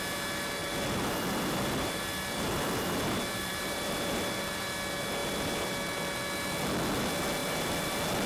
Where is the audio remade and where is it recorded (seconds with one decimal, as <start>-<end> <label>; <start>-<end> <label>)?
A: 0.0-0.6 recorded; 0.6-4.6 remade; 4.6-5.2 recorded; 5.2-5.8 remade; 5.8-7.4 recorded; 7.4-7.9 remade; 7.9-8.3 recorded